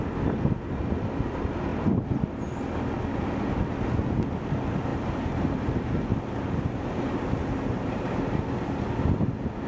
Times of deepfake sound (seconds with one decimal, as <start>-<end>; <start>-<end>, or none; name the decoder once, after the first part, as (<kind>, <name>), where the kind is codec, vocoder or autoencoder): 4.9-5.6 (vocoder, BigVGAN v2); 6.1-8.2